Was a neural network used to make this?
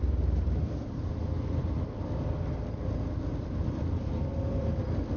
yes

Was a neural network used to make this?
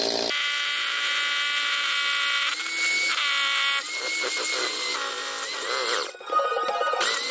no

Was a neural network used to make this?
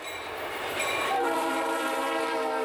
yes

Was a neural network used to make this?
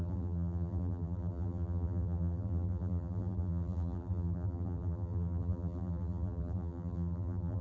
yes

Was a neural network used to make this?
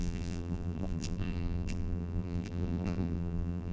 yes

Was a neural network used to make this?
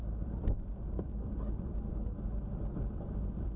yes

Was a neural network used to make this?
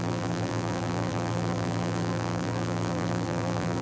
yes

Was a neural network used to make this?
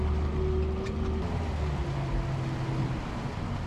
no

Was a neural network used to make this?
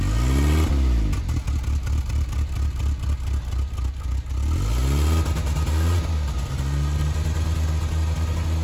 no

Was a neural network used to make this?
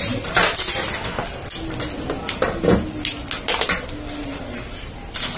no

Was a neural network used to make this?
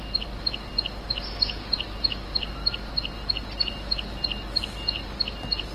no